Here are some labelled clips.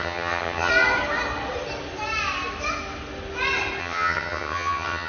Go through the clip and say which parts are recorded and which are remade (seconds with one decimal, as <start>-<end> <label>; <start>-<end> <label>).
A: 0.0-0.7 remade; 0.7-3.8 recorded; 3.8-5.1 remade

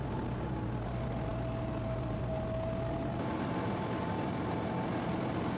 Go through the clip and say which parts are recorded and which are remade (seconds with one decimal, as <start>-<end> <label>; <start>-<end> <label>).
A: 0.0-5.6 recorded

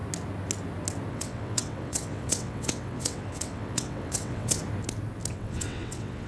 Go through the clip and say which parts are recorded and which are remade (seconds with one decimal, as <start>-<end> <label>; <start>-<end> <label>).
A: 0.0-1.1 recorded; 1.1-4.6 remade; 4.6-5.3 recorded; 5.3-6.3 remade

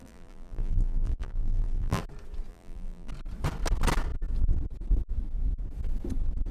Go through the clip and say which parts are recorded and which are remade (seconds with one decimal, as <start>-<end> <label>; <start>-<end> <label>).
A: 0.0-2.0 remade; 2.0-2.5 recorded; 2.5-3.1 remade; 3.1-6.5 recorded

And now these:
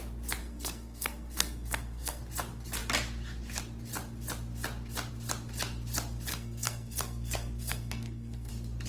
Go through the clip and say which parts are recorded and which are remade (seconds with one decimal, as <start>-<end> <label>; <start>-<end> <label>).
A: 0.0-0.4 recorded; 0.4-2.2 remade; 2.2-6.3 recorded; 6.3-8.5 remade; 8.5-8.9 recorded

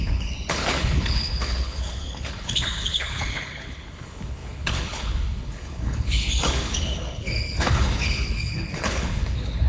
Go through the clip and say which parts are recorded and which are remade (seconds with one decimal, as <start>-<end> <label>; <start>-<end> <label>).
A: 0.0-9.7 remade

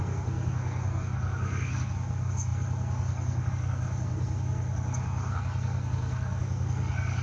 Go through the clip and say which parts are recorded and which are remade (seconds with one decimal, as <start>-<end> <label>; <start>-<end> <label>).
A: 0.0-7.2 remade